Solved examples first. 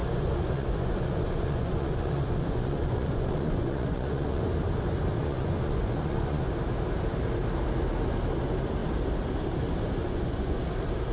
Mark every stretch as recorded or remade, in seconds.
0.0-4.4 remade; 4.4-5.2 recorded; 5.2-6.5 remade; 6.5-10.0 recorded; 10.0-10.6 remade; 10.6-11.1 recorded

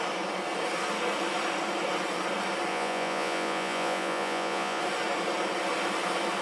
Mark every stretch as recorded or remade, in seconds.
0.0-2.7 recorded; 2.7-4.8 remade; 4.8-6.4 recorded

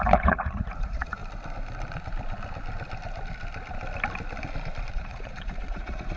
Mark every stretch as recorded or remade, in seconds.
0.0-1.2 remade; 1.2-4.9 recorded; 4.9-6.2 remade

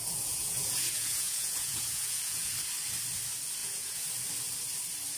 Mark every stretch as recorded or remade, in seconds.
0.0-2.5 remade; 2.5-3.6 recorded; 3.6-4.1 remade; 4.1-5.2 recorded

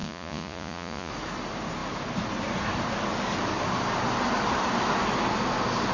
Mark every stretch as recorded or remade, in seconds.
0.0-1.1 remade; 1.1-5.9 recorded

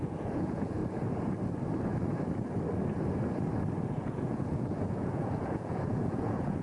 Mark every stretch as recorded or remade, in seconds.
0.0-0.8 remade; 0.8-4.0 recorded; 4.0-6.6 remade

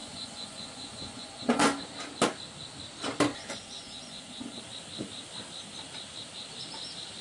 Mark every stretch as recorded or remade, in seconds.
0.0-1.8 remade; 1.8-3.3 recorded; 3.3-4.6 remade; 4.6-7.2 recorded

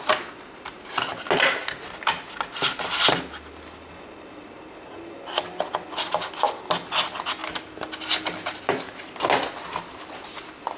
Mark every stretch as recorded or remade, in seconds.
0.0-10.8 recorded